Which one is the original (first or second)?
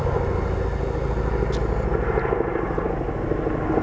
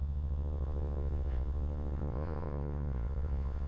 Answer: first